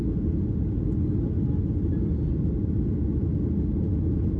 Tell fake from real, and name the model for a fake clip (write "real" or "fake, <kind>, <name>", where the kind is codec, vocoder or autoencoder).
real